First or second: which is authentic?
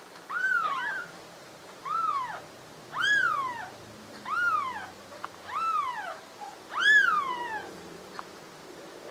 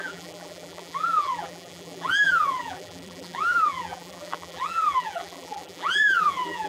first